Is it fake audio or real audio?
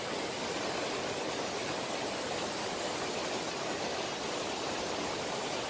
real